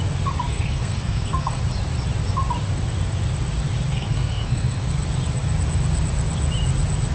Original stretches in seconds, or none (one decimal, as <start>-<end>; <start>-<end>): 0.0-0.5; 1.6-3.9; 4.9-7.1